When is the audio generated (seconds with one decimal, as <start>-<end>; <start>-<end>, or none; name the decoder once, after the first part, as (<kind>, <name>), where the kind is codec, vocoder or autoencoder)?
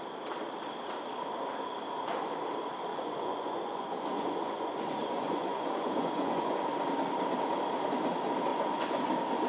2.9-6.6 (vocoder, Vocos); 8.5-9.0